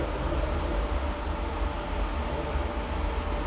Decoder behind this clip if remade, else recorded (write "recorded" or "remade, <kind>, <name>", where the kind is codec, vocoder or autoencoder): recorded